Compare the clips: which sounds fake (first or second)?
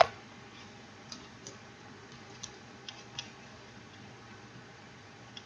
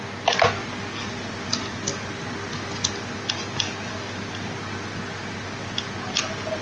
first